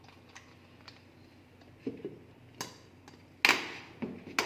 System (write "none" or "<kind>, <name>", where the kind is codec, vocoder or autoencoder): none